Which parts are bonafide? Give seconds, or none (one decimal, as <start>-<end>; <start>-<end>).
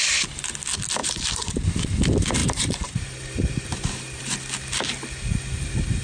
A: 0.0-1.0; 1.6-2.4; 4.2-6.0